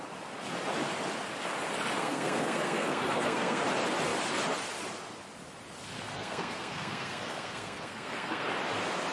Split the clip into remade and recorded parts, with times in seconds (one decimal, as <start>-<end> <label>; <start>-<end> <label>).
0.0-2.0 recorded; 2.0-3.6 remade; 3.6-6.1 recorded; 6.1-8.5 remade; 8.5-9.1 recorded